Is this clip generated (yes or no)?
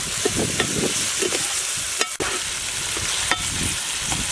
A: no